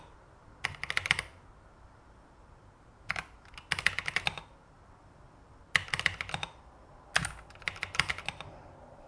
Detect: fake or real real